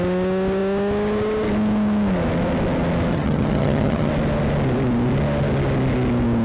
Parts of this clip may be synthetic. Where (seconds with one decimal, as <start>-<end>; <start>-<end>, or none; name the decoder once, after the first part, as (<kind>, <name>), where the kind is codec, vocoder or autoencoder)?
3.1-4.1 (vocoder, HiFi-GAN)

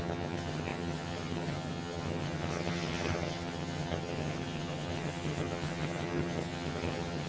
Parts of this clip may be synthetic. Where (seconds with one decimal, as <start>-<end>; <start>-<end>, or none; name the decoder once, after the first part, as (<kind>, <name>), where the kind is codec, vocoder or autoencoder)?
0.0-7.3 (vocoder, HiFi-GAN)

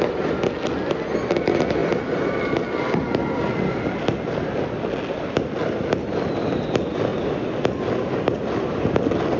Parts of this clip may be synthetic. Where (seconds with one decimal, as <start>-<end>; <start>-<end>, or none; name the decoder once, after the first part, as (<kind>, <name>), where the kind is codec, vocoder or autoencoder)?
none